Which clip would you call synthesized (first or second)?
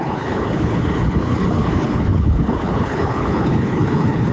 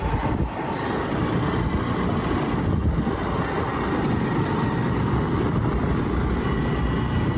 first